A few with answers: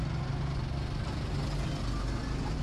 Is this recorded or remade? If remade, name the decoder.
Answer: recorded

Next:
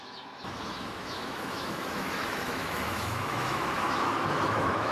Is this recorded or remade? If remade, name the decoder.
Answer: remade, autoencoder, DAC-VAE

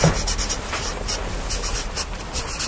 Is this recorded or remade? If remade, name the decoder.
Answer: recorded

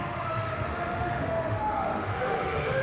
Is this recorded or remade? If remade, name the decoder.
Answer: remade, autoencoder, DAC-VAE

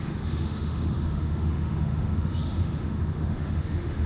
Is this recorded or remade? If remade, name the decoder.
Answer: remade, autoencoder, DAC-VAE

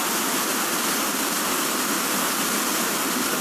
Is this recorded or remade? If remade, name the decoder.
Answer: recorded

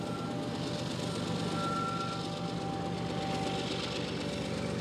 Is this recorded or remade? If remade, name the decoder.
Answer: recorded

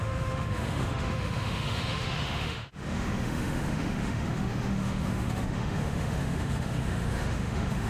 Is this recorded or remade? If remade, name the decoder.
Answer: remade, autoencoder, DAC-VAE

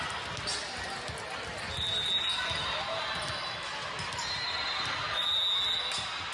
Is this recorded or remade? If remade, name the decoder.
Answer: recorded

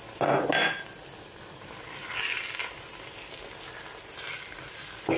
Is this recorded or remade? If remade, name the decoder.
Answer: recorded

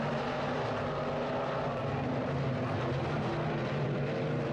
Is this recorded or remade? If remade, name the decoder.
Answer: recorded